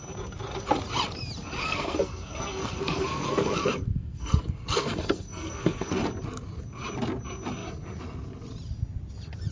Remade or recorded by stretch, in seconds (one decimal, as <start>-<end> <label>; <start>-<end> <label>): 0.0-1.6 recorded; 1.6-6.0 remade; 6.0-9.5 recorded